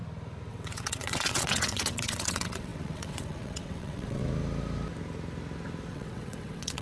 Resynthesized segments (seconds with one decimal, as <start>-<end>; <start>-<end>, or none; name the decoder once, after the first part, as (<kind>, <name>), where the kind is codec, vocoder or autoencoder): 0.5-4.2 (vocoder, WaveNeXt); 5.9-6.8